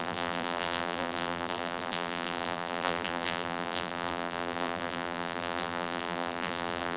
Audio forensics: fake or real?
fake